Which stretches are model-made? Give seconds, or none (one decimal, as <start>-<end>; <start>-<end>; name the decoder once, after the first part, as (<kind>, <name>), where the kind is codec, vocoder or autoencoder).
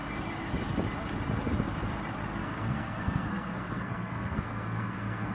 2.4-5.3 (codec, SNAC)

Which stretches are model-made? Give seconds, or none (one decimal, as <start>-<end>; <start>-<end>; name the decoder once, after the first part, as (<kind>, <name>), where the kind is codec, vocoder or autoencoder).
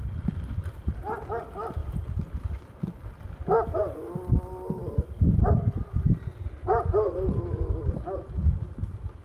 none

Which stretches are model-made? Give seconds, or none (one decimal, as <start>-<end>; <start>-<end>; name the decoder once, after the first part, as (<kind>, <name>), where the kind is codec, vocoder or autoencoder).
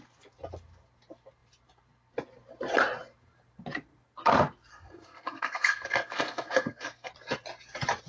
4.7-7.1 (codec, SNAC)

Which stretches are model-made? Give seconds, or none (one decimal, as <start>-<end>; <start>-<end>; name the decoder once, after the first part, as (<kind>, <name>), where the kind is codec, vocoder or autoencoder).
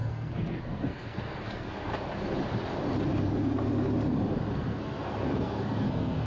0.0-1.9 (codec, SNAC); 4.5-6.3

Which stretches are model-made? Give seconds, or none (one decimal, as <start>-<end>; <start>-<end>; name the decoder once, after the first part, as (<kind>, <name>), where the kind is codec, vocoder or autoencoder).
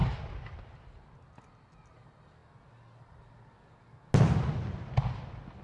none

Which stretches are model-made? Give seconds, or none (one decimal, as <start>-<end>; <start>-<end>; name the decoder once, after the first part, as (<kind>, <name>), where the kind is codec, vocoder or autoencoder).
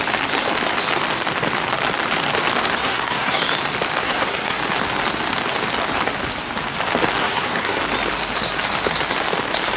2.8-3.4 (codec, SNAC); 4.0-4.6; 7.2-7.8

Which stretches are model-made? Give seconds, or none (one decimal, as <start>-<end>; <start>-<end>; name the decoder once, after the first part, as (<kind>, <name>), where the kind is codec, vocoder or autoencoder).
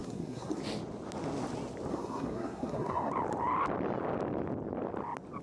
0.0-0.6 (codec, SNAC); 1.9-3.1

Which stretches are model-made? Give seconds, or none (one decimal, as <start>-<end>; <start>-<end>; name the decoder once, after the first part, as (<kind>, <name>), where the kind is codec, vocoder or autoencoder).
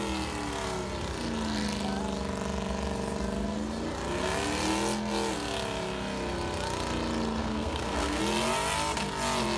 7.4-8.2 (codec, SNAC)